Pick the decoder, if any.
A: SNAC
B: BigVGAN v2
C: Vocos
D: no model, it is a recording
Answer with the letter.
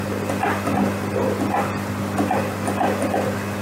D